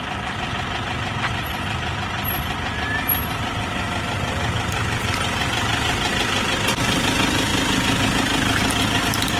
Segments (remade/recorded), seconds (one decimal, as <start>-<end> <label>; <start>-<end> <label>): 0.0-9.4 recorded

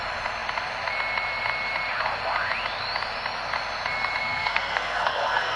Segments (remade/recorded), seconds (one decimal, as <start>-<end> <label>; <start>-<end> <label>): 0.0-4.2 recorded; 4.2-5.6 remade

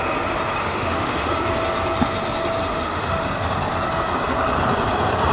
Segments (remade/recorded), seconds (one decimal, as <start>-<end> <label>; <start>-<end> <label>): 0.0-0.6 recorded; 0.6-1.3 remade; 1.3-2.7 recorded; 2.7-3.2 remade; 3.2-5.3 recorded